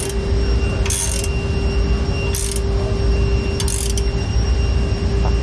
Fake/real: real